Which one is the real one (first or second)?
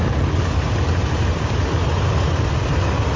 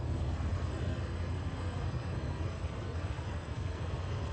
first